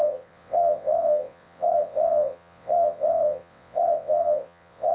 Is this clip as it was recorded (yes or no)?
no